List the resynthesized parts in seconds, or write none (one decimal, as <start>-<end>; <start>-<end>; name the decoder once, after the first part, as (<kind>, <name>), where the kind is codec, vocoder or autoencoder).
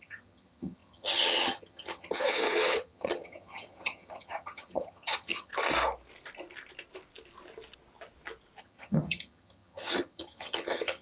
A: 0.0-5.5 (vocoder, HiFi-GAN); 8.6-11.0